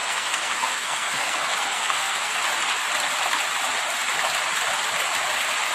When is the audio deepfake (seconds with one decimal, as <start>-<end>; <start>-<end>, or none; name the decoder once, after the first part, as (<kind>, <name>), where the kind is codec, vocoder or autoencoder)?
0.0-2.4 (codec, SNAC)